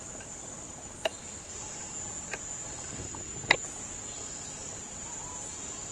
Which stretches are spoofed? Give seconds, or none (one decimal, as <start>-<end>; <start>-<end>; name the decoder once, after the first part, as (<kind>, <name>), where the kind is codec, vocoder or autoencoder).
none